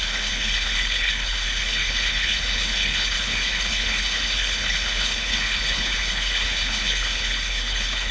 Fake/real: fake